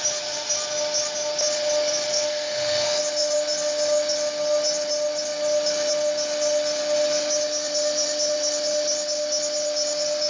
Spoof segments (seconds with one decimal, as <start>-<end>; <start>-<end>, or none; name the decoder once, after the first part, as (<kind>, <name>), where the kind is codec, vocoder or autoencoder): 2.1-3.0 (codec, SNAC)